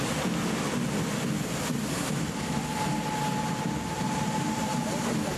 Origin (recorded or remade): recorded